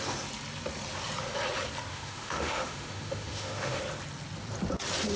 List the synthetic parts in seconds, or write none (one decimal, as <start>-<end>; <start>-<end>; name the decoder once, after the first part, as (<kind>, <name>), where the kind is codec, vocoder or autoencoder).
1.9-3.8 (autoencoder, DAC-VAE)